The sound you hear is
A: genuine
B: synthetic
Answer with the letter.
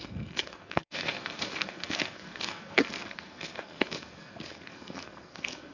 B